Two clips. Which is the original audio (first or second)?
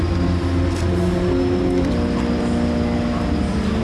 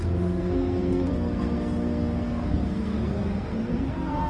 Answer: first